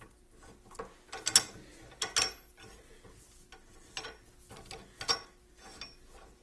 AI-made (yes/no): no